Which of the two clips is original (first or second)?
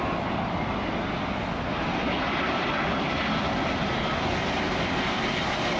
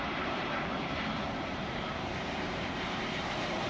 first